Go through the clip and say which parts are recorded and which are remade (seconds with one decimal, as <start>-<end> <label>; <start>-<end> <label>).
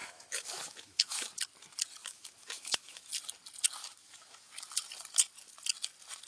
0.0-1.3 remade; 1.3-2.0 recorded; 2.0-3.1 remade; 3.1-3.8 recorded; 3.8-4.5 remade; 4.5-6.3 recorded